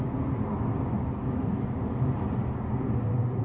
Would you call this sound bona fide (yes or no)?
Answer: yes